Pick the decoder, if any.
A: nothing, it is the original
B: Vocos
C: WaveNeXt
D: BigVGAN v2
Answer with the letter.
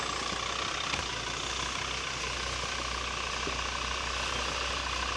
A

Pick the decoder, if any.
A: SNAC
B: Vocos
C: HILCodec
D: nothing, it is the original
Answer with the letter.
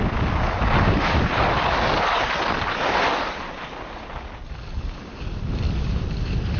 D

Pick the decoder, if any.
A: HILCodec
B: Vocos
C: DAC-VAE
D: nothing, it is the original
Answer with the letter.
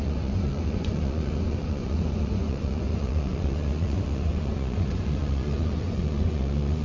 B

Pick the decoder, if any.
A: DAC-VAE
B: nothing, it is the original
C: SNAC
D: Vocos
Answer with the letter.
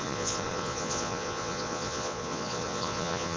D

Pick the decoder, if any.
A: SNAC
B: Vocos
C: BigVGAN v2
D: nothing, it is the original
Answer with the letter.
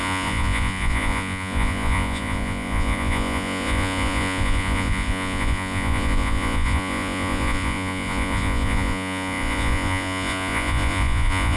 B